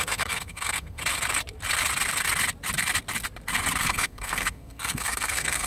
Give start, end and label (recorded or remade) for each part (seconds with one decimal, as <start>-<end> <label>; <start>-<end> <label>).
0.0-1.0 remade; 1.0-3.8 recorded; 3.8-5.7 remade